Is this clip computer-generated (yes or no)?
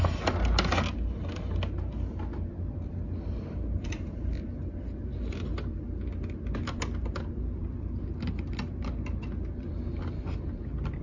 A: no